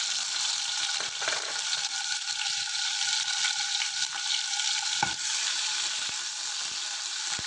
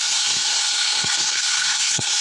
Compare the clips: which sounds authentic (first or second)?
first